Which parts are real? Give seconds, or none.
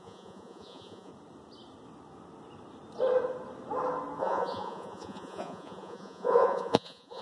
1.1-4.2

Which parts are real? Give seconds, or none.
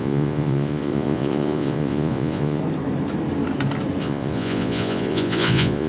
2.6-4.0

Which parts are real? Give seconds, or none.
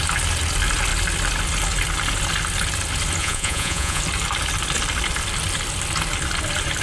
0.0-3.2; 4.0-6.8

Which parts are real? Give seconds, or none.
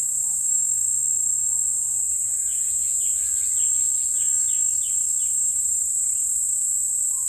0.0-7.3